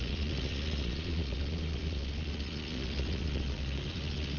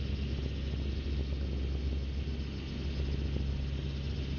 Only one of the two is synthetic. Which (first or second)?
first